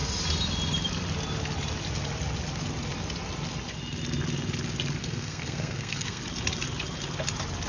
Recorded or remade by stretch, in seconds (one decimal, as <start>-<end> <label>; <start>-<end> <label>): 0.0-5.0 recorded; 5.0-6.2 remade; 6.2-7.7 recorded